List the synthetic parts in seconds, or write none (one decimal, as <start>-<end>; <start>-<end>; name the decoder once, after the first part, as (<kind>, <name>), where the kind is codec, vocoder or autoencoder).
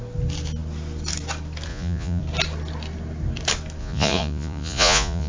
1.7-2.2 (vocoder, Vocos); 3.8-5.3